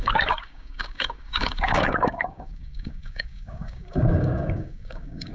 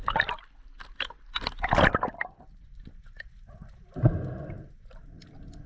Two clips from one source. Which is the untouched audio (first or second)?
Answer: second